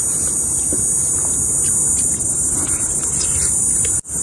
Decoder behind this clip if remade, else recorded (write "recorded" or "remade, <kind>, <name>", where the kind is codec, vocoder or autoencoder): recorded